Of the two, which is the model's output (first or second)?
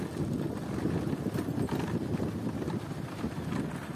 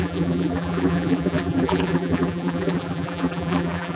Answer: second